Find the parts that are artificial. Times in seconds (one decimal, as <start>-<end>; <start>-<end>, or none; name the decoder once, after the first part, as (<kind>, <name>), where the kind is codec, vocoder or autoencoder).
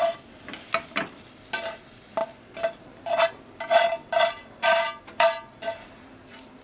none